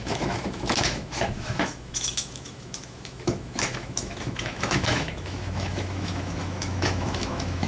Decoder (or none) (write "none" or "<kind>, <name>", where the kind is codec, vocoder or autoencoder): autoencoder, DAC-VAE